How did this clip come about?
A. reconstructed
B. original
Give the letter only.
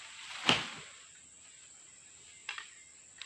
B